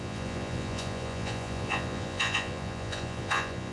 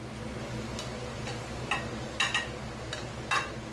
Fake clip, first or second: first